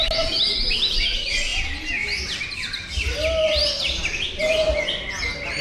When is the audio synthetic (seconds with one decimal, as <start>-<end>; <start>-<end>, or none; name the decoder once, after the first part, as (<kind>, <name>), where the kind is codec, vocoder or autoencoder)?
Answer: none